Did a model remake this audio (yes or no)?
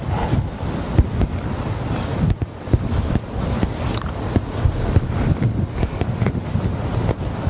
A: no